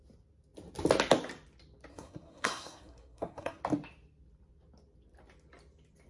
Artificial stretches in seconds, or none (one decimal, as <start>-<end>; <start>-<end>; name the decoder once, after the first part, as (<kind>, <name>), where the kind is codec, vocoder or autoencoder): 1.9-3.6 (codec, SNAC)